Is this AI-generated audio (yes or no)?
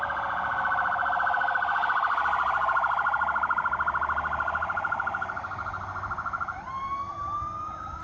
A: no